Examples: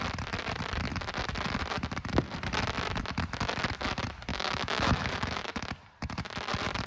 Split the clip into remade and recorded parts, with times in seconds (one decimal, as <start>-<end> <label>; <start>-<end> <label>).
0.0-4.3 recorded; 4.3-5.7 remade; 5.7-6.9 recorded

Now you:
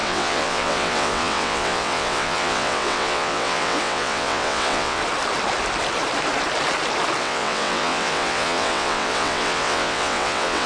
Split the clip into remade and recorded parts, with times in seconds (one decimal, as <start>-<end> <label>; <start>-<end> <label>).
0.0-5.0 remade; 5.0-7.2 recorded; 7.2-10.7 remade

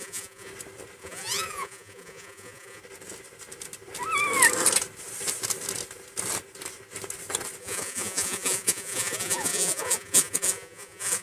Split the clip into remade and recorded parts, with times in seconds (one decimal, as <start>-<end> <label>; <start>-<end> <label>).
0.0-0.5 remade; 0.5-1.0 recorded; 1.0-2.8 remade; 2.8-7.6 recorded; 7.6-11.2 remade

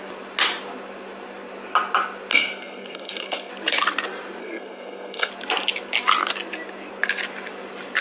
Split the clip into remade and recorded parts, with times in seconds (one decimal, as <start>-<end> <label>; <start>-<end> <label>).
0.0-2.3 recorded; 2.3-3.5 remade; 3.5-4.4 recorded; 4.4-5.3 remade; 5.3-8.0 recorded

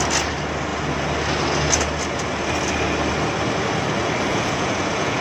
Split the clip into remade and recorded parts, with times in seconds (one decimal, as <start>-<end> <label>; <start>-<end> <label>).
0.0-4.3 recorded; 4.3-5.2 remade

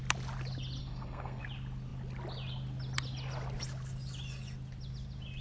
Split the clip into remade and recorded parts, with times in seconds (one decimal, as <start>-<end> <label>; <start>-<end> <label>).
0.0-0.8 recorded; 0.8-1.4 remade; 1.4-5.4 recorded

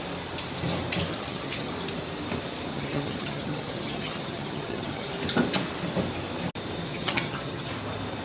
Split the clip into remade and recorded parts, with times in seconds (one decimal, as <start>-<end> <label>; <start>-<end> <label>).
0.0-1.1 recorded; 1.1-1.7 remade; 1.7-2.7 recorded; 2.7-5.1 remade; 5.1-6.9 recorded; 6.9-7.7 remade; 7.7-8.2 recorded

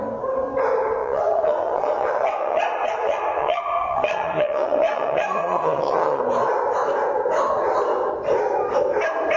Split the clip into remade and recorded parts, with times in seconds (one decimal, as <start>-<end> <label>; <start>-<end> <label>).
0.0-1.0 recorded; 1.0-6.2 remade; 6.2-9.4 recorded